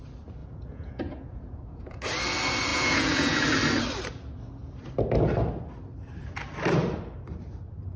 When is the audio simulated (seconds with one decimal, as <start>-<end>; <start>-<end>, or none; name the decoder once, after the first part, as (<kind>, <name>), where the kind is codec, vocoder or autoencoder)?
0.4-2.0 (vocoder, Vocos); 2.7-3.4